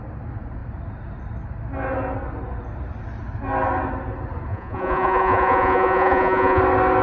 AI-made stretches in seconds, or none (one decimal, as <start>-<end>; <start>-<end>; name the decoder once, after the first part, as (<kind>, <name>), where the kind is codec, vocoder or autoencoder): 4.5-6.6 (vocoder, Vocos)

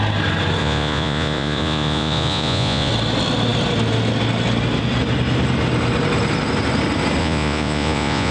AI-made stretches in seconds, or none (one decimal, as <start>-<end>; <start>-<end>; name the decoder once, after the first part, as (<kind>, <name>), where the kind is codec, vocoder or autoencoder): 0.6-2.9 (vocoder, Vocos); 7.2-8.3

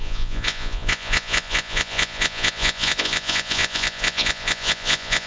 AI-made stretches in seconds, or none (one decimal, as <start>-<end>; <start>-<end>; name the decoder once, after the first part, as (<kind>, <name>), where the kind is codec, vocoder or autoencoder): 0.0-5.3 (vocoder, Vocos)

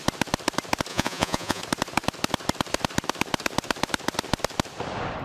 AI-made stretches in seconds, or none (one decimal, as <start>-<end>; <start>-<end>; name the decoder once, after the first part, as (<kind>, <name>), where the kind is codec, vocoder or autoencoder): 0.9-1.6 (vocoder, Vocos)

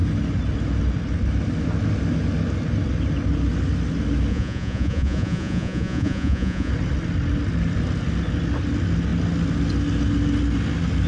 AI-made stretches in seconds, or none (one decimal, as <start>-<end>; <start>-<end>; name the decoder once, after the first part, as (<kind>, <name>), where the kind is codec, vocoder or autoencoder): 4.3-6.7 (vocoder, Vocos)

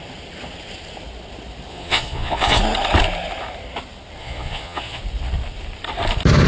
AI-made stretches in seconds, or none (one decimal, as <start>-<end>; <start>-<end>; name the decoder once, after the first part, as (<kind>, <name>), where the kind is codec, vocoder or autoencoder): 1.7-2.6 (vocoder, Vocos); 4.2-5.0

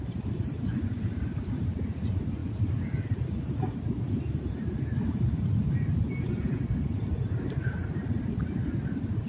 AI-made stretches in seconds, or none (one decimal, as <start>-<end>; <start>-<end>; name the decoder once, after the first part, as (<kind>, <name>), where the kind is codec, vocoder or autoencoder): none

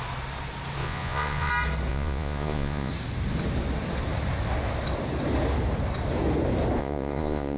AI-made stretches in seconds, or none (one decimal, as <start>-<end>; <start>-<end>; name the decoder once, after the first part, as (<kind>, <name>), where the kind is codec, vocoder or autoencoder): 0.8-1.5 (vocoder, Vocos); 1.9-2.9; 6.8-7.6